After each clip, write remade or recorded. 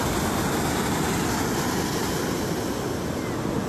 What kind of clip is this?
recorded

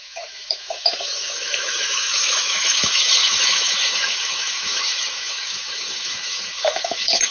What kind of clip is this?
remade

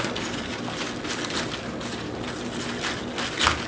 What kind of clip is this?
recorded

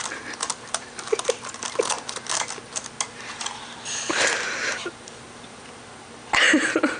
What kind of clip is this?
recorded